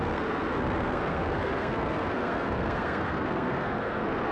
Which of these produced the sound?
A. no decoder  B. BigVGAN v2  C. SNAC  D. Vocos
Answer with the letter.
C